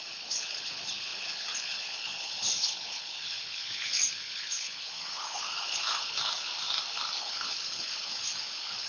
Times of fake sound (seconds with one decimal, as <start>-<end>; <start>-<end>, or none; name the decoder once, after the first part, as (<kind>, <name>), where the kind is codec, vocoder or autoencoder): 0.0-6.5 (codec, HILCodec); 7.2-8.9